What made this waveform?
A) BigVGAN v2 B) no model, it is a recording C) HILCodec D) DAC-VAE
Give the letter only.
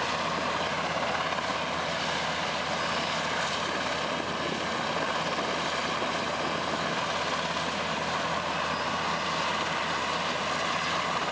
B